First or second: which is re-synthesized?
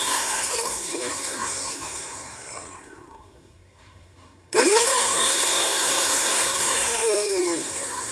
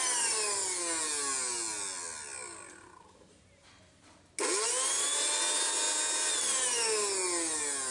first